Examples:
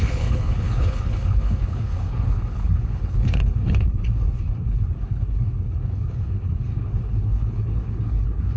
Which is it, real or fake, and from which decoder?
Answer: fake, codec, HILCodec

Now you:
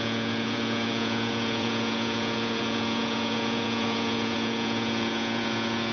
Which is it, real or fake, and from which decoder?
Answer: fake, vocoder, Vocos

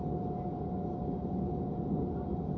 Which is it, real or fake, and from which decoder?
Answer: real